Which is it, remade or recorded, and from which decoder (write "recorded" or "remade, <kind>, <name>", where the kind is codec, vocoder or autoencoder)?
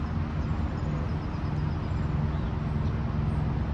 recorded